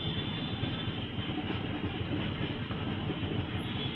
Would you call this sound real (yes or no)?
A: yes